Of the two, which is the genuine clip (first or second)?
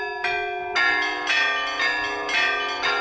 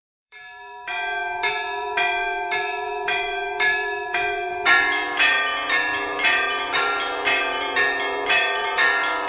first